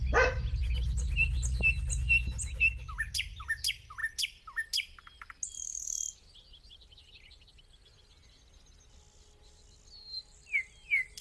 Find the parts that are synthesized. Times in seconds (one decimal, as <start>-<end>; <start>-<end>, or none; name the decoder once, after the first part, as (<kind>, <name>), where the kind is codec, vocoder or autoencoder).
none